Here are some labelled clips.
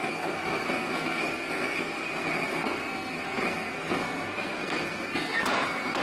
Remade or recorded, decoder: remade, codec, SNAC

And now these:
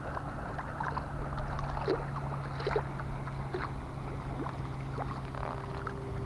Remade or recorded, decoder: recorded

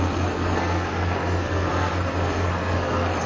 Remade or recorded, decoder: remade, codec, SNAC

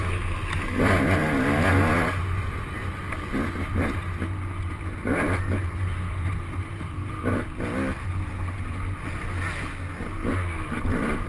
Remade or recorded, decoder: recorded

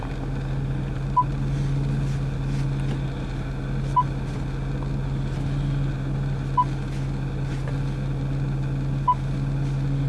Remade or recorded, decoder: recorded